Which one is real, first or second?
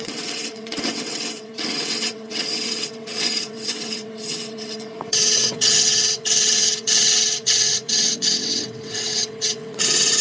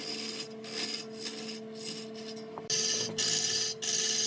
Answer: second